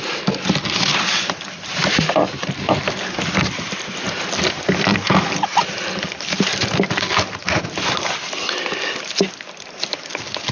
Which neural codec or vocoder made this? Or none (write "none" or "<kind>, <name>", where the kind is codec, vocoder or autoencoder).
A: none